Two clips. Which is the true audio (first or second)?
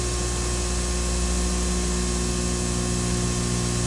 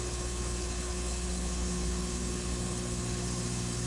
first